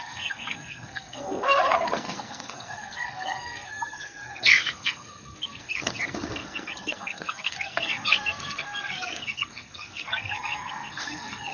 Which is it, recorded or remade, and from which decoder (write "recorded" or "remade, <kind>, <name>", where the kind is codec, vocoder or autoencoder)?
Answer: remade, codec, SNAC